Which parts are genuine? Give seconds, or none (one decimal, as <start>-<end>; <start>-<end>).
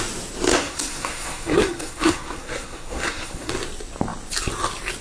0.0-0.5; 3.5-5.0